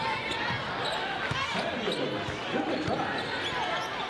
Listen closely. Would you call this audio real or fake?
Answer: real